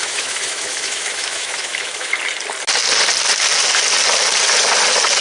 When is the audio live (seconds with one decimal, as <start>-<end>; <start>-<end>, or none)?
2.1-5.2